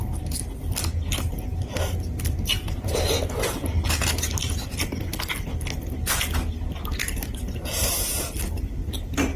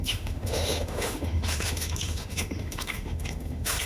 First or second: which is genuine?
first